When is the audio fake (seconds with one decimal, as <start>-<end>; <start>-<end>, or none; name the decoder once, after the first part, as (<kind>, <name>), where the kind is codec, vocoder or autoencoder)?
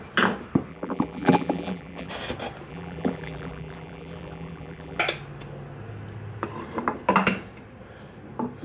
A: 0.7-2.1 (vocoder, BigVGAN v2); 2.7-5.0